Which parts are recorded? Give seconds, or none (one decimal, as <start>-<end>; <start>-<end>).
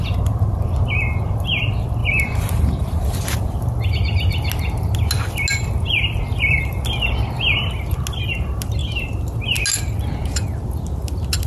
0.0-2.0; 3.2-8.8; 9.4-11.5